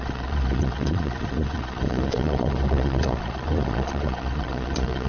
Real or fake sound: fake